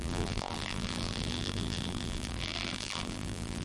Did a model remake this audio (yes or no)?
yes